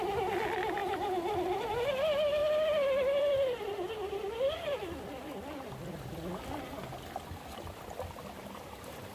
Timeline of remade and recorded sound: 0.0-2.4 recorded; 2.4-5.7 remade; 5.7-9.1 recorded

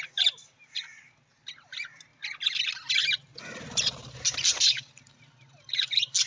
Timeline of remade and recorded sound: 0.0-6.3 recorded

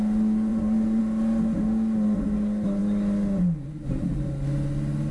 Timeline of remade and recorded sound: 0.0-0.5 recorded; 0.5-1.0 remade; 1.0-5.1 recorded

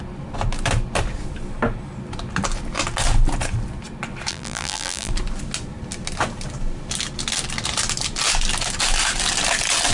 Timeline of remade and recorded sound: 0.0-4.3 recorded; 4.3-5.1 remade; 5.1-9.9 recorded

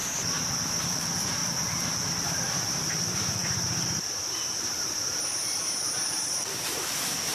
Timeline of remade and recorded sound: 0.0-0.8 recorded; 0.8-1.4 remade; 1.4-2.0 recorded; 2.0-7.3 remade

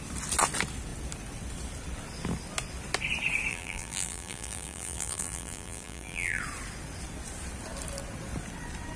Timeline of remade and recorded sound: 0.0-3.5 recorded; 3.5-6.4 remade; 6.4-9.0 recorded

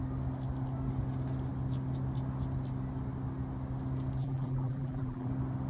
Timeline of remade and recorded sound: 0.0-4.2 recorded; 4.2-5.3 remade; 5.3-5.7 recorded